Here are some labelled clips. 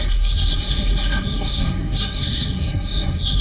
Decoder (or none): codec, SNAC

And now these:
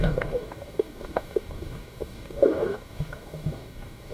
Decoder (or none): codec, DAC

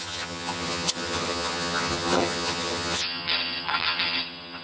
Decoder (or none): vocoder, HiFi-GAN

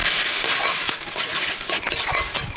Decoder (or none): none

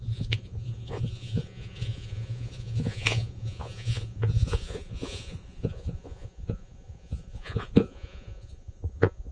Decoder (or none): vocoder, Vocos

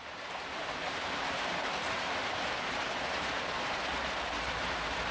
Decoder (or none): vocoder, BigVGAN v2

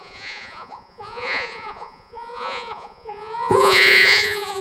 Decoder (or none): vocoder, Vocos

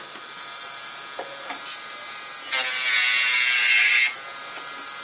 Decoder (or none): none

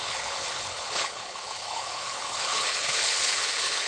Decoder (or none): codec, HILCodec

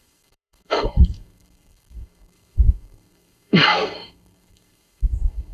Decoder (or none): codec, SNAC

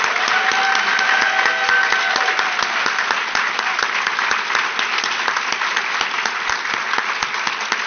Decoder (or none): none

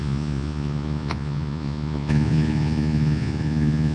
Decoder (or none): vocoder, Vocos